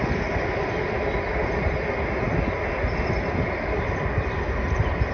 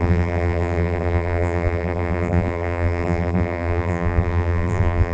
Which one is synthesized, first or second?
second